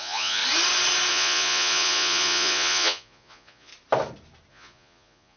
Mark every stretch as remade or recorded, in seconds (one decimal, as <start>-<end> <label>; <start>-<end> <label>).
0.0-0.4 remade; 0.4-1.1 recorded; 1.1-3.7 remade; 3.7-4.5 recorded; 4.5-5.4 remade